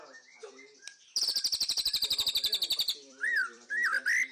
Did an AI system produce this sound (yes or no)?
yes